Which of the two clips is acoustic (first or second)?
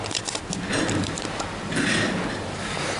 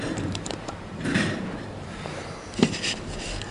first